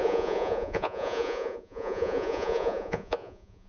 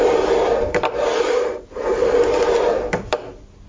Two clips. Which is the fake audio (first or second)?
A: first